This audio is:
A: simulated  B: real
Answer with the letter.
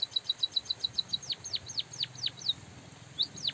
B